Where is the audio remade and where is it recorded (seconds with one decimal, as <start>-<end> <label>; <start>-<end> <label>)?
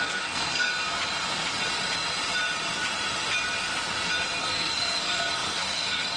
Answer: 0.0-0.7 remade; 0.7-4.4 recorded; 4.4-6.2 remade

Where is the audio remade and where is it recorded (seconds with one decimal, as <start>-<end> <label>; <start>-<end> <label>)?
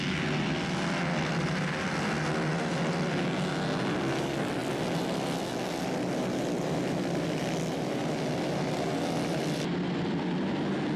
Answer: 0.0-11.0 recorded